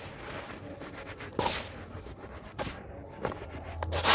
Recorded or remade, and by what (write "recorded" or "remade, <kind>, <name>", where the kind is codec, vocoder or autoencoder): recorded